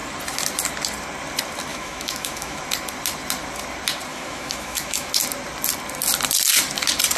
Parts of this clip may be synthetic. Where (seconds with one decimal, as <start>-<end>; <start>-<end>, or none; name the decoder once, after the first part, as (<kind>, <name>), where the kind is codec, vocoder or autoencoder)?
1.7-2.6 (autoencoder, DAC-VAE); 4.1-5.1